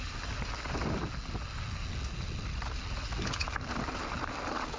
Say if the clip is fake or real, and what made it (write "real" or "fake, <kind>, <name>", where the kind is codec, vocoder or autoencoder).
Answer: real